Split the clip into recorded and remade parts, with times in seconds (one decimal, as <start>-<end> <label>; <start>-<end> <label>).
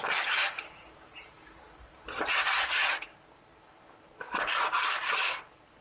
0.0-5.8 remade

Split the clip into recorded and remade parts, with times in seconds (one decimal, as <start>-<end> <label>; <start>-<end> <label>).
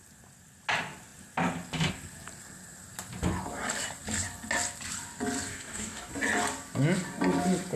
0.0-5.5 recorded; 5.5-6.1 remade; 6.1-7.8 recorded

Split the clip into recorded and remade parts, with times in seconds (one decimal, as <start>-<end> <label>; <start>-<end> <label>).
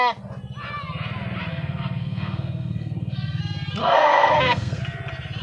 0.0-1.5 recorded; 1.5-3.4 remade; 3.4-3.8 recorded; 3.8-4.8 remade; 4.8-5.4 recorded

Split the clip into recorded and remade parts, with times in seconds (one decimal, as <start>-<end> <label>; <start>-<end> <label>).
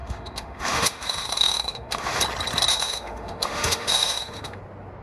0.0-2.2 remade; 2.2-2.7 recorded; 2.7-4.6 remade; 4.6-5.0 recorded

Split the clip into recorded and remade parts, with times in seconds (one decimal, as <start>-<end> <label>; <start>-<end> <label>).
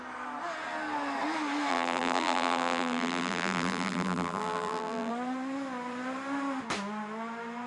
0.0-1.7 recorded; 1.7-5.1 remade; 5.1-7.7 recorded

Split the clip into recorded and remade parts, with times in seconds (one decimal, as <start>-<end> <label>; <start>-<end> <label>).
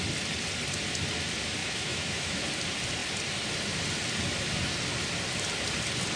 0.0-1.6 recorded; 1.6-2.4 remade; 2.4-6.2 recorded